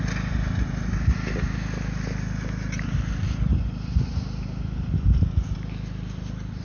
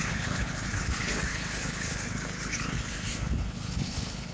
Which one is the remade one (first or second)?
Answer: second